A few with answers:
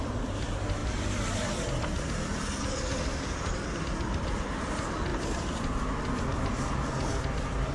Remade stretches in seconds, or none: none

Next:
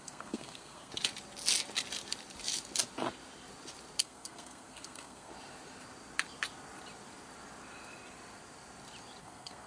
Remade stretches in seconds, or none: 0.0-0.9 (codec, SNAC); 4.0-5.3; 9.2-9.7

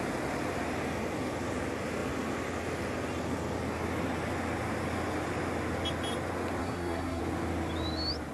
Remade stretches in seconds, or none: 6.6-7.2 (codec, SNAC)

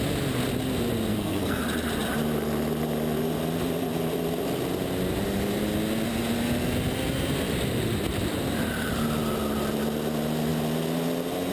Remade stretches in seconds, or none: 1.1-1.6 (codec, SNAC)

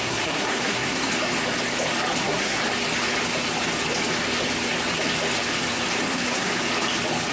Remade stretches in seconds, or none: 0.0-1.0 (codec, SNAC); 2.2-2.6; 6.1-6.5

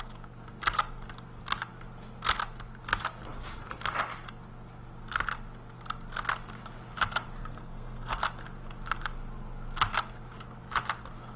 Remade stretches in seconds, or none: 7.4-8.2 (codec, SNAC)

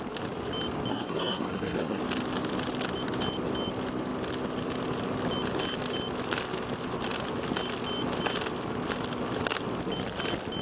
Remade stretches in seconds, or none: 0.9-2.0 (codec, SNAC)

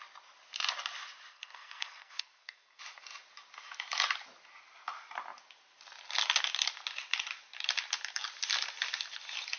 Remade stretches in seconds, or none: 1.3-2.8 (codec, SNAC)